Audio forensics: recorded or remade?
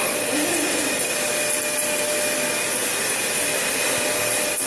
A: recorded